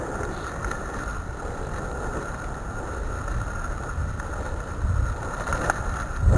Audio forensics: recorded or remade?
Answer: recorded